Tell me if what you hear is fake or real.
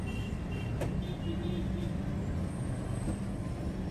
real